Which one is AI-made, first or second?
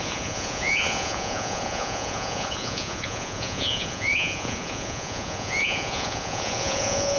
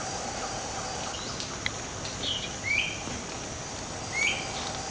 first